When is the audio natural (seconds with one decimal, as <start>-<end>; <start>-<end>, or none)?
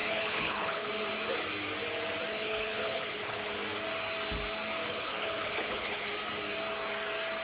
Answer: 0.9-2.3; 3.5-4.8; 6.1-7.4